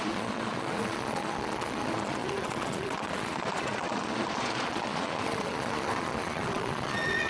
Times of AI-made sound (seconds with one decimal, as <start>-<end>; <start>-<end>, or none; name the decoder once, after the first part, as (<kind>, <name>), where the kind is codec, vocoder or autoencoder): 0.0-7.3 (vocoder, Vocos)